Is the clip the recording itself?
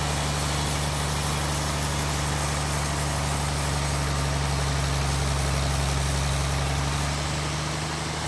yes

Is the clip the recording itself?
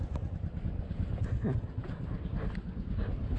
yes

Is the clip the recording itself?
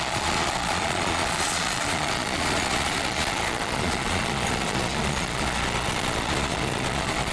no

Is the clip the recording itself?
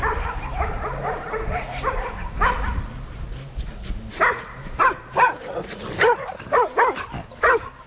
yes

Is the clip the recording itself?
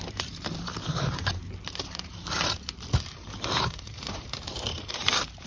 no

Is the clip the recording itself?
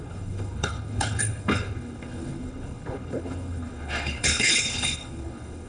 no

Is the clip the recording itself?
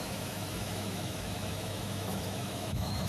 no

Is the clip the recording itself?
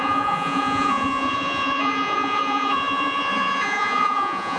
no